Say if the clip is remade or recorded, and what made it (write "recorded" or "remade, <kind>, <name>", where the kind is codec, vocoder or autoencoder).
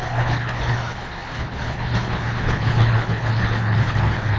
remade, codec, HILCodec